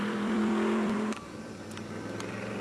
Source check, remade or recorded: remade